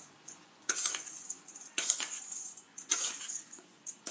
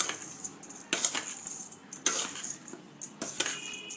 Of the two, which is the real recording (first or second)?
second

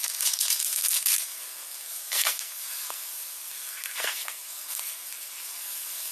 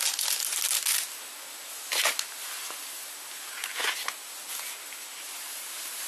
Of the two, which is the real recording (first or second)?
second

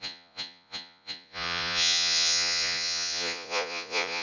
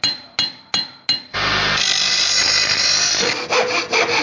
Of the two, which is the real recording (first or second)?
second